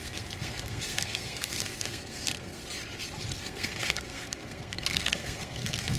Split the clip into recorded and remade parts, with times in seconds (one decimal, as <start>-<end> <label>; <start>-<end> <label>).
0.0-2.6 remade; 2.6-3.4 recorded; 3.4-6.0 remade